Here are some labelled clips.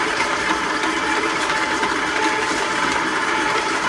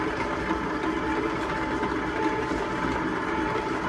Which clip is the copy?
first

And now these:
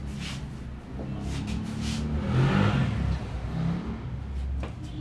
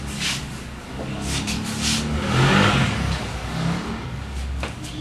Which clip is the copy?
second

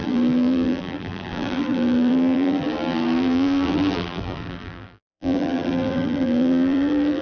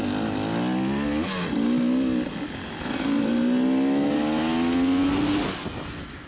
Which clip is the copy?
first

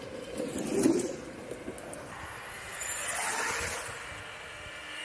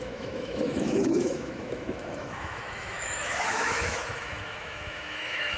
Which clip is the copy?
second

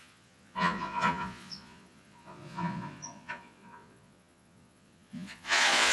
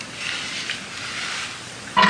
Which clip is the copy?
first